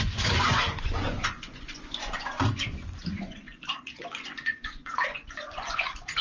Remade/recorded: remade